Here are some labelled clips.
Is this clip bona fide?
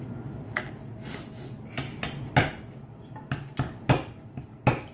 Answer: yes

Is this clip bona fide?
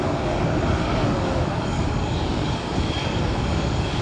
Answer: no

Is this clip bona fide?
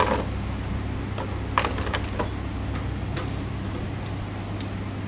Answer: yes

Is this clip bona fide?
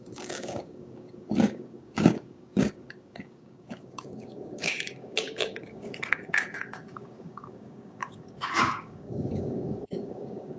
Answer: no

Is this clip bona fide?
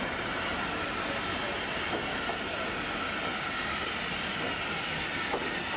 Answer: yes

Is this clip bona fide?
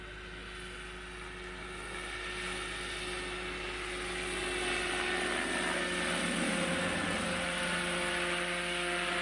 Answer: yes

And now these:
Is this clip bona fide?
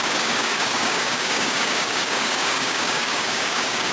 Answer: no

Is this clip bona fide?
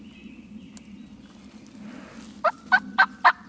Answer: yes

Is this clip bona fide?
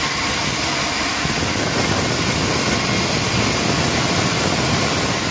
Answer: yes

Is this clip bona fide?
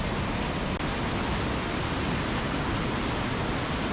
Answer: yes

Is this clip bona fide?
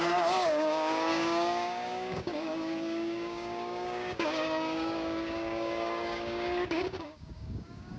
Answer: no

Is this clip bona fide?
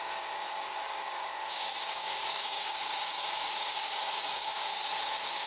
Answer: no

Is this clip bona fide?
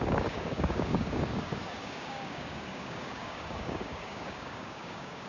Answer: no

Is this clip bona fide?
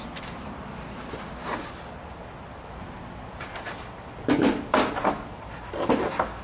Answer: yes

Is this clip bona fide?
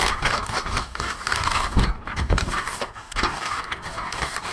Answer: no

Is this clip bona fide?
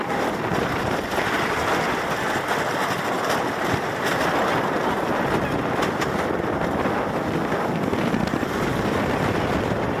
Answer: yes